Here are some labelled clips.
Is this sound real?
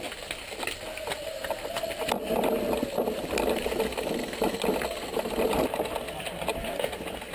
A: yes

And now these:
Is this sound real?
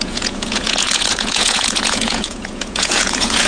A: no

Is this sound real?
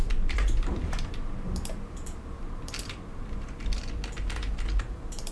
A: no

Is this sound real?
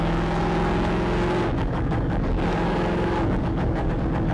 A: no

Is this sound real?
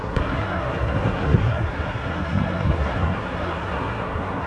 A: no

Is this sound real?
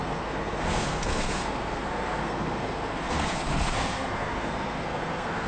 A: no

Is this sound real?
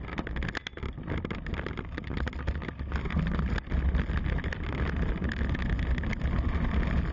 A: yes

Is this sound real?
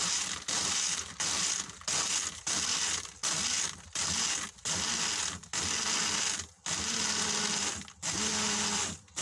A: yes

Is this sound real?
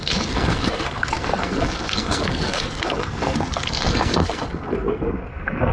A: no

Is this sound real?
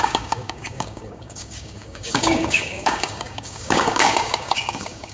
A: no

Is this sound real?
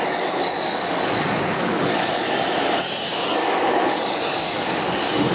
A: no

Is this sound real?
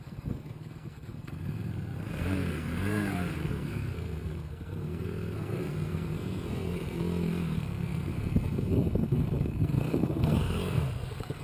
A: no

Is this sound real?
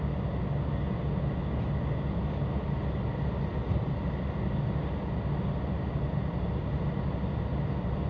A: yes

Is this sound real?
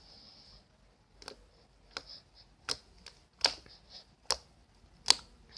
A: yes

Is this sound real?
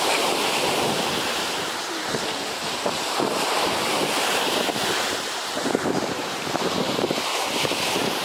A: no